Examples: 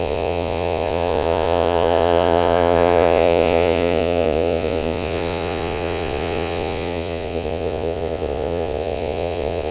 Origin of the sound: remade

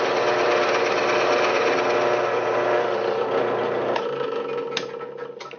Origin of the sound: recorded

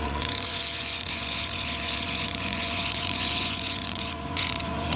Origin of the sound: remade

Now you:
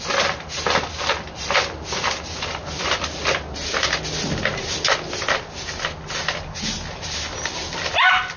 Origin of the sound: recorded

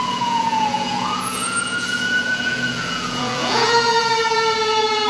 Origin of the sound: remade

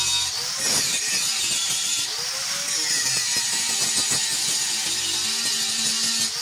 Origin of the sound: recorded